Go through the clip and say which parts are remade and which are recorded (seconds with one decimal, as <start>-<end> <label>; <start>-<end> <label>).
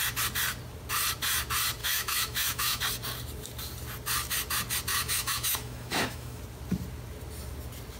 0.0-1.8 recorded; 1.8-2.8 remade; 2.8-4.9 recorded; 4.9-6.4 remade; 6.4-8.0 recorded